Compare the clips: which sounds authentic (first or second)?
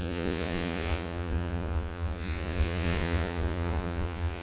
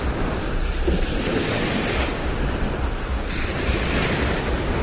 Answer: second